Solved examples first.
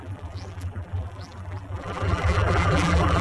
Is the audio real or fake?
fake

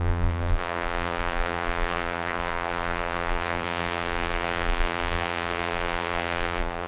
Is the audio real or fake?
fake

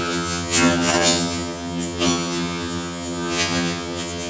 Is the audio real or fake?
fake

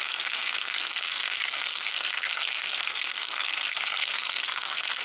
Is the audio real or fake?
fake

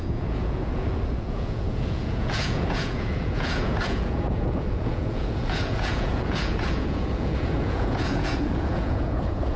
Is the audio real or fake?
fake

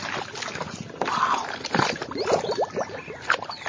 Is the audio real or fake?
real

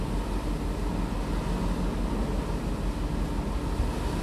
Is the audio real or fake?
real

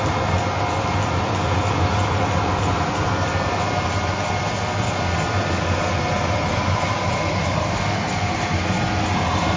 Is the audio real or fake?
real